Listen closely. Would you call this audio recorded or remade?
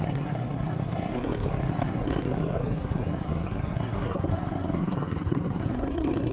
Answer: remade